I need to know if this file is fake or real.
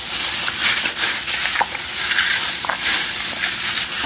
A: real